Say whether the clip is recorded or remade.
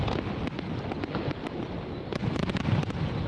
recorded